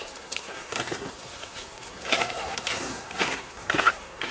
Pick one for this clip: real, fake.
fake